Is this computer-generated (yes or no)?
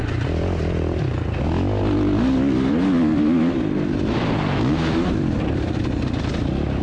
no